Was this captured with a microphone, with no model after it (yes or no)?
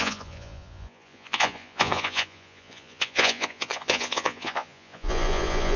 no